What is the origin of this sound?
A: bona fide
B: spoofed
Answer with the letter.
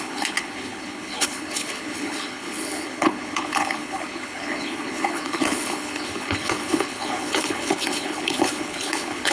B